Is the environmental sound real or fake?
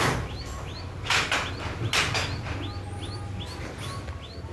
real